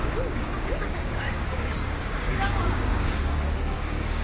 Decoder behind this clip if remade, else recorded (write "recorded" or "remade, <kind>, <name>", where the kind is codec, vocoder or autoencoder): remade, codec, DAC